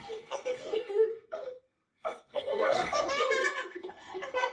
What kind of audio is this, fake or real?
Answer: fake